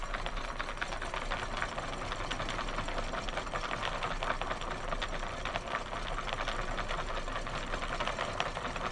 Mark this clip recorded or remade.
recorded